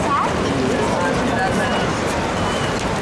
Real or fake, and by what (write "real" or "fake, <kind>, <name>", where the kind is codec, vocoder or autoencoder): real